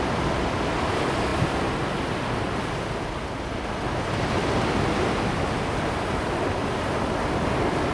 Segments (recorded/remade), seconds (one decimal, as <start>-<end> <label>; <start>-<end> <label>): 0.0-7.9 recorded